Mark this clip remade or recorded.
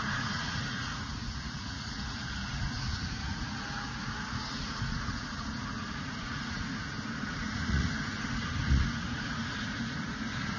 remade